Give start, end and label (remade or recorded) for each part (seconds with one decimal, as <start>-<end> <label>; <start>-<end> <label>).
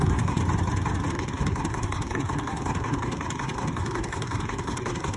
0.0-0.4 remade; 0.4-1.1 recorded; 1.1-5.2 remade